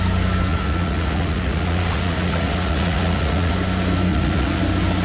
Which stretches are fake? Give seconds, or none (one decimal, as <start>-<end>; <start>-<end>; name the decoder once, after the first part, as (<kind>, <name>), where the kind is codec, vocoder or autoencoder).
0.5-3.5 (vocoder, Vocos); 4.1-4.6